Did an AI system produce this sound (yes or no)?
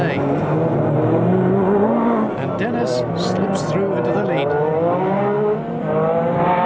no